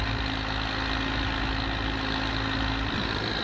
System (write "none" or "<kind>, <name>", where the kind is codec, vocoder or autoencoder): none